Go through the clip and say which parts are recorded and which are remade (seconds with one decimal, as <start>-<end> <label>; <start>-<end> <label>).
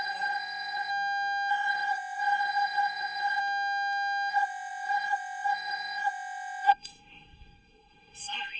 0.0-0.9 remade; 0.9-1.5 recorded; 1.5-3.4 remade; 3.4-4.3 recorded; 4.3-8.6 remade